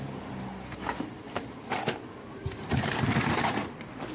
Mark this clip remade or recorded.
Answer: remade